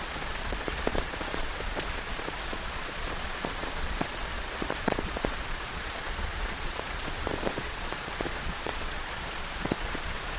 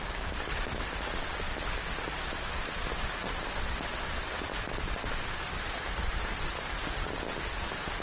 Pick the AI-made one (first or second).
first